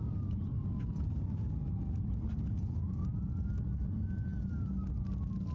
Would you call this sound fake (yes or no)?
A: no